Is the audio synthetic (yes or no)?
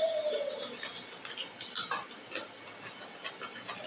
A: no